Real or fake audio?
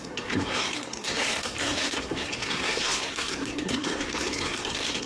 fake